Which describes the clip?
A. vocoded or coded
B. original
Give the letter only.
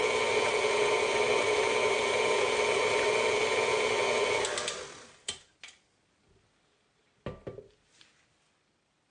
B